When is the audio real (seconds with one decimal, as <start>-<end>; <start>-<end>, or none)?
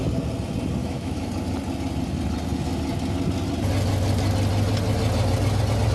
0.0-0.8; 1.3-5.9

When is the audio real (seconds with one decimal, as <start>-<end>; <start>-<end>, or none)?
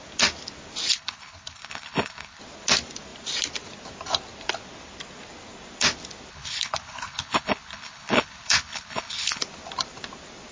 0.0-0.9; 2.4-6.3; 9.4-10.5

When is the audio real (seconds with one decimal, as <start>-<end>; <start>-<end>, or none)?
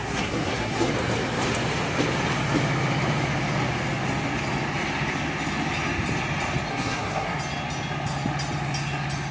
0.9-6.7; 7.4-9.3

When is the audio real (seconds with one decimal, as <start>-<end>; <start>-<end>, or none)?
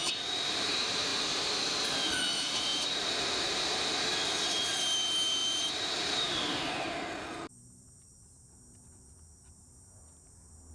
4.1-4.7